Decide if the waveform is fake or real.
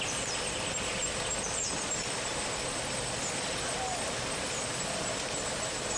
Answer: real